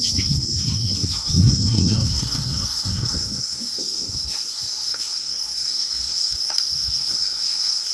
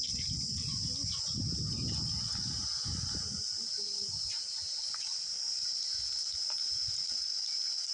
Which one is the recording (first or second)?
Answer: second